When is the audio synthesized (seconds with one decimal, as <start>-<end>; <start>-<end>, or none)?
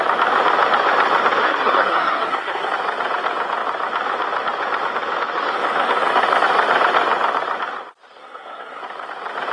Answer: 1.4-2.7; 8.2-8.8